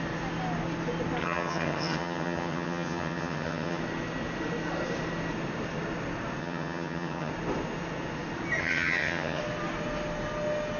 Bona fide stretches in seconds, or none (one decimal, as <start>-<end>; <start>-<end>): 0.0-1.2; 3.8-6.4; 7.3-8.6; 9.4-10.8